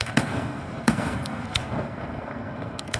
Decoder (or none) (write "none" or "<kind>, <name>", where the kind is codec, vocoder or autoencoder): codec, SNAC